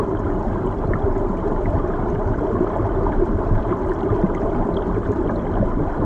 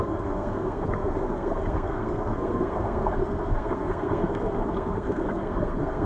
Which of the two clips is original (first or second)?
first